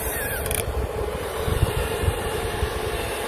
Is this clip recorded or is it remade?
remade